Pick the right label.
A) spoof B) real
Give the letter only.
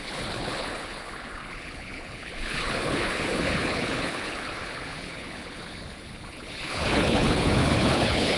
A